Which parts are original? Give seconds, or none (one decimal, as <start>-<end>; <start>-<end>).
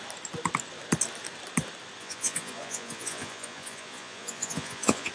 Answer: 0.0-2.0